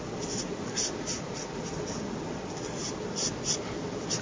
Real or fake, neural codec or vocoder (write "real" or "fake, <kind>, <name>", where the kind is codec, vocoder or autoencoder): real